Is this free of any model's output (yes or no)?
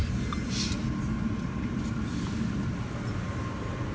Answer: yes